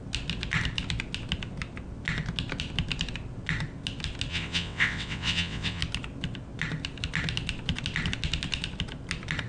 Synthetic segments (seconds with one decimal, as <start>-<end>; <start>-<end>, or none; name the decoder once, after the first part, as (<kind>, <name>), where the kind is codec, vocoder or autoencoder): 4.3-5.8 (vocoder, WaveNeXt)